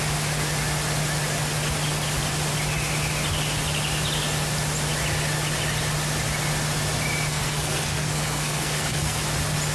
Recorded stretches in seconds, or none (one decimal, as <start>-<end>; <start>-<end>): 0.0-7.3; 9.2-9.7